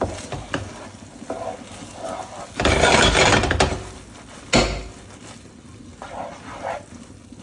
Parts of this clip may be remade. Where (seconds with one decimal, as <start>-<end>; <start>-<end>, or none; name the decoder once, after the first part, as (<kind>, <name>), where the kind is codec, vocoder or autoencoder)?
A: none